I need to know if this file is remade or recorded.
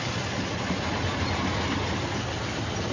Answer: recorded